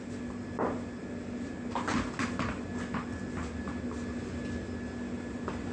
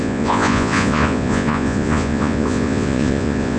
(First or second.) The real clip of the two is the first